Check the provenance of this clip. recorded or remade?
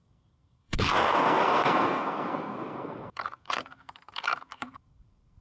remade